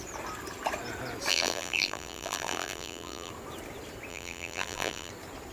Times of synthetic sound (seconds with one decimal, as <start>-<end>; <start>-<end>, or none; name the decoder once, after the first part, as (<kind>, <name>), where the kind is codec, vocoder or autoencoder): 1.3-3.3 (vocoder, BigVGAN v2); 4.1-5.1